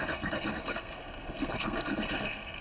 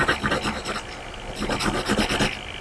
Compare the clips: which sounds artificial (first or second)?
first